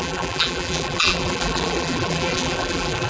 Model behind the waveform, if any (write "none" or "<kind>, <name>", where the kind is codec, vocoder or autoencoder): vocoder, BigVGAN v2